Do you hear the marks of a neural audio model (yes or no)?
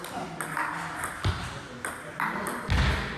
no